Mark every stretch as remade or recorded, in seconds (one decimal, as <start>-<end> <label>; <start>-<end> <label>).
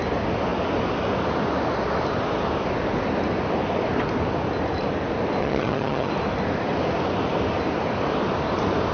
0.0-5.4 recorded; 5.4-6.1 remade; 6.1-8.9 recorded